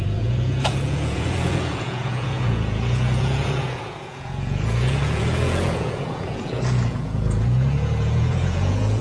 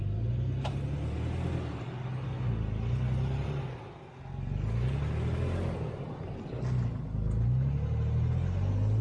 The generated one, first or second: first